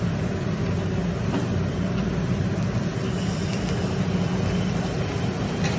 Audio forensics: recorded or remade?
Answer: recorded